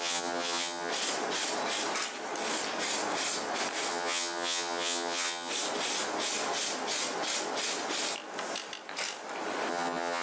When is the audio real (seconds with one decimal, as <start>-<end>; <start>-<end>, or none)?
0.9-3.9; 5.5-9.7